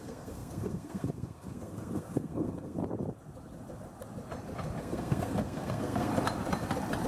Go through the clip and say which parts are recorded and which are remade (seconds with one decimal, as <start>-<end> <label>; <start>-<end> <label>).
0.0-2.8 remade; 2.8-4.8 recorded; 4.8-6.1 remade; 6.1-7.1 recorded